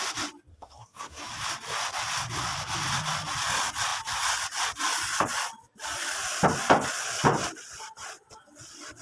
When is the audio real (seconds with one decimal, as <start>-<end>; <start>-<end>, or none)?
0.0-0.5; 1.2-9.0